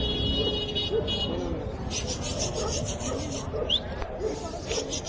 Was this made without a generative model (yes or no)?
yes